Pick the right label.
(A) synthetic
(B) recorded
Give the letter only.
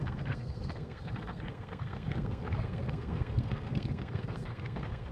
A